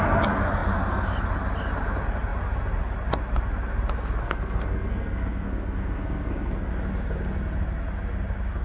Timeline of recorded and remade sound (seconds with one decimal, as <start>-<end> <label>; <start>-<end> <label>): 0.0-4.2 recorded; 4.2-6.7 remade; 6.7-8.6 recorded